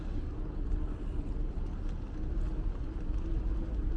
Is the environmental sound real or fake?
real